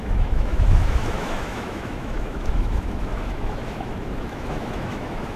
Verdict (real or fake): fake